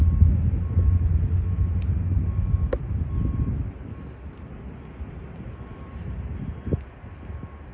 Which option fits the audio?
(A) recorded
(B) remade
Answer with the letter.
A